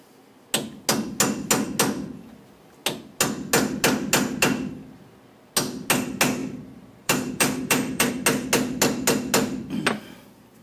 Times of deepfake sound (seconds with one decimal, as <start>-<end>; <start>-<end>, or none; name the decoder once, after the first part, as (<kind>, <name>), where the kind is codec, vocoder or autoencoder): 6.4-8.1 (vocoder, BigVGAN v2)

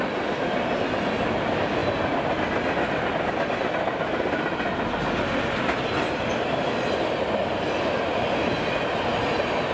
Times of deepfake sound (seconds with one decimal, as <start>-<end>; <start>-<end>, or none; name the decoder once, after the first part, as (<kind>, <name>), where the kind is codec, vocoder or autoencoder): none

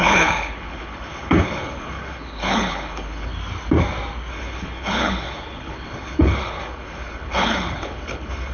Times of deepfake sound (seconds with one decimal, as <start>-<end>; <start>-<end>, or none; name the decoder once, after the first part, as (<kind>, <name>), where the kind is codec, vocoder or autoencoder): 0.0-3.3 (codec, HILCodec); 4.3-8.5